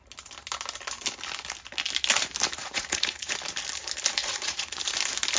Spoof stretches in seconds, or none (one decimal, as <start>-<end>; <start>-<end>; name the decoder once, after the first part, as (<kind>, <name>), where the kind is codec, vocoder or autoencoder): 2.6-3.3 (vocoder, Vocos); 4.2-4.8